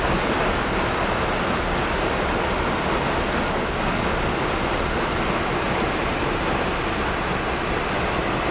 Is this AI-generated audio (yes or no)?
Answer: no